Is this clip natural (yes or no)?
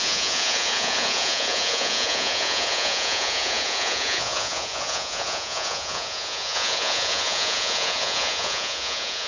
no